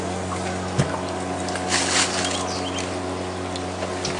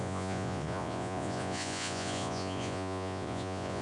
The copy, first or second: second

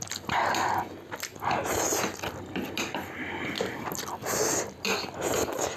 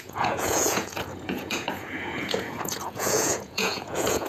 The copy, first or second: second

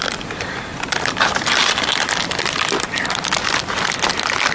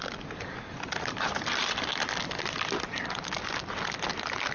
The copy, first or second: first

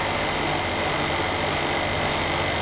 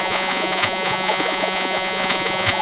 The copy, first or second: second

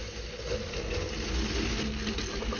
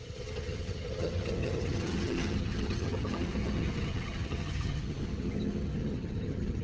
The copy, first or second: second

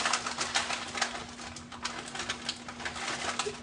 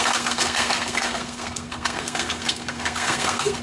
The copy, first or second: second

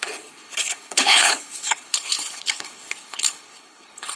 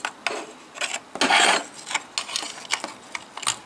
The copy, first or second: first